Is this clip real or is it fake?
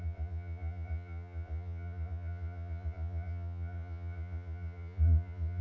fake